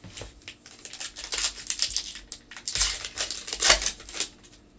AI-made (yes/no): no